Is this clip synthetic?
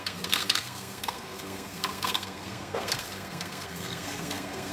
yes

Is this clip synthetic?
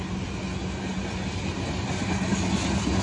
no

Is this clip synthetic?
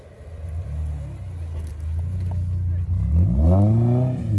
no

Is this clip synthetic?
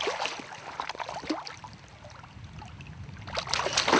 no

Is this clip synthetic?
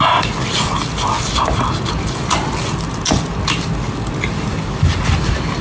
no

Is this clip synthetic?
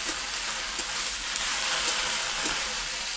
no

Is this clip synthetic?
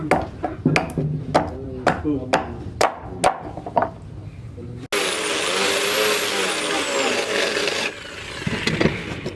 no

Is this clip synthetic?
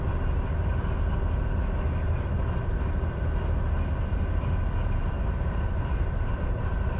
no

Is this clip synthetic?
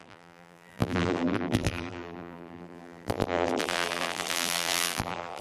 yes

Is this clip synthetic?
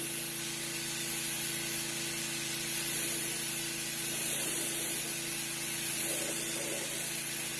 no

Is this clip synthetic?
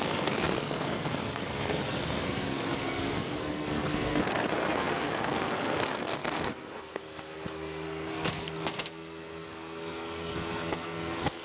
yes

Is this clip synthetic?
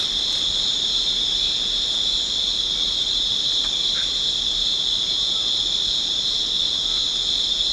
no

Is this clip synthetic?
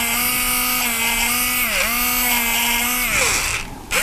no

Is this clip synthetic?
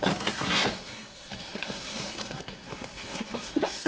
yes